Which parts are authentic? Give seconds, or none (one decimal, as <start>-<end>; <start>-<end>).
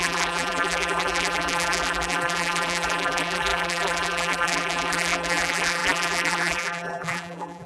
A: none